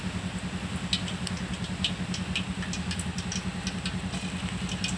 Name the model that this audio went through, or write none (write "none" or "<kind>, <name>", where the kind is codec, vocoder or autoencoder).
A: none